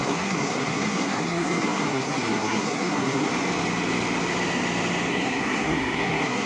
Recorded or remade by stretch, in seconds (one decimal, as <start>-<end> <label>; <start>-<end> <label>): 0.0-3.3 remade; 3.3-5.1 recorded; 5.1-6.5 remade